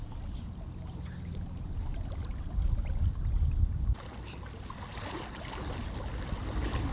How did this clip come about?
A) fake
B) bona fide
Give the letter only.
B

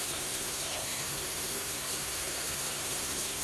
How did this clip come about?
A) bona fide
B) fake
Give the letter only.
B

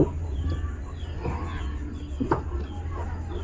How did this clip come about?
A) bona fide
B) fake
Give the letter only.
A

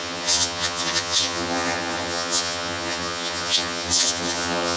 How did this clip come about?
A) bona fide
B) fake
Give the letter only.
B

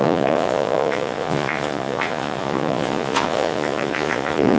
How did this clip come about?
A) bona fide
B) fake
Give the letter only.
B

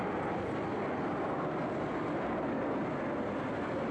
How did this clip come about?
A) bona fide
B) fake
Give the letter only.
A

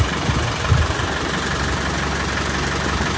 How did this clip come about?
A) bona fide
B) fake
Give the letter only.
A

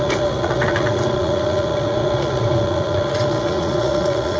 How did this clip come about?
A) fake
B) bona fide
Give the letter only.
A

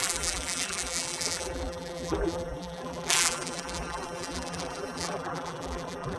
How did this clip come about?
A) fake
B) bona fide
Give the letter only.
A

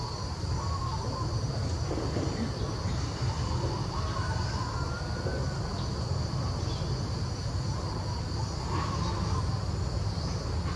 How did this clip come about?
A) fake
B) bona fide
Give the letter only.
B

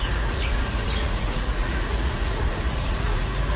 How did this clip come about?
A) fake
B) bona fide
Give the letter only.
A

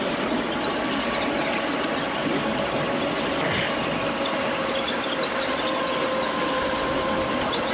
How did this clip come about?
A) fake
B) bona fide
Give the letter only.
B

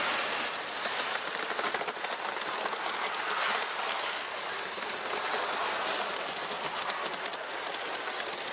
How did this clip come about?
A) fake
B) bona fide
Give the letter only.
B